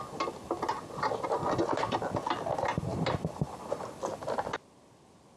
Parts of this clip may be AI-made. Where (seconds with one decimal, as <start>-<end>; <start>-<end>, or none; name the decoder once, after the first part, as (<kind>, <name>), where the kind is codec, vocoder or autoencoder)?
none